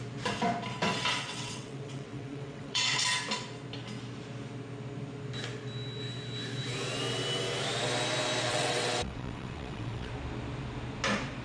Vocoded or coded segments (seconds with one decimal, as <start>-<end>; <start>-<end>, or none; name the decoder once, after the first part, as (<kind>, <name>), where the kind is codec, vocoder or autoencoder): 1.3-3.0 (vocoder, WaveNeXt); 8.5-10.1